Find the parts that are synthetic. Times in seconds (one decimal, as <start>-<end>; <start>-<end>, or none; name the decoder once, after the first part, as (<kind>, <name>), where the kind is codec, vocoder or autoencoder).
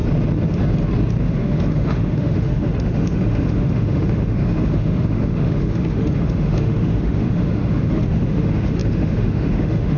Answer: 1.2-10.0 (autoencoder, DAC-VAE)